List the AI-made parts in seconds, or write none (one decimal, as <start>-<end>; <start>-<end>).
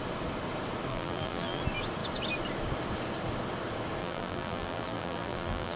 0.9-1.6; 4.0-5.8